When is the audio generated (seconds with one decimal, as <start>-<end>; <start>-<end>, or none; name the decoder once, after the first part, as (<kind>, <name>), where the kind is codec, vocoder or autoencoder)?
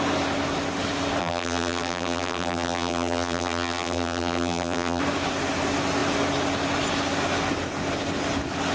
1.2-5.0 (vocoder, BigVGAN v2)